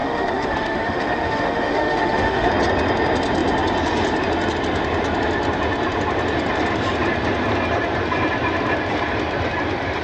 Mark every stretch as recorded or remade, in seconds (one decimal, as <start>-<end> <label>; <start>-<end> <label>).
0.0-2.5 remade; 2.5-10.0 recorded